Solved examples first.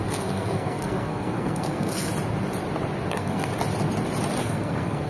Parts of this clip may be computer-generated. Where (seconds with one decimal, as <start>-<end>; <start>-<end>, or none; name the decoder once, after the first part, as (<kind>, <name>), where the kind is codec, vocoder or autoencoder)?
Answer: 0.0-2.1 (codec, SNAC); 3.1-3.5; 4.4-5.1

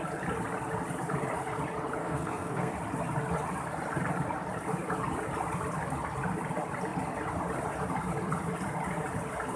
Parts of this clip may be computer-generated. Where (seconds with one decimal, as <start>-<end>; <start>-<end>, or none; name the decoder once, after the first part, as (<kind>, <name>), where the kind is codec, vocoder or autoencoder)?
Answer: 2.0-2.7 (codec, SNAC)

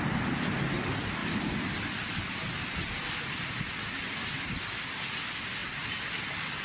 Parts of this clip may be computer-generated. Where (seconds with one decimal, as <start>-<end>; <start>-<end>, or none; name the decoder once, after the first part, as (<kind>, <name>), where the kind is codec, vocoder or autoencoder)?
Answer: none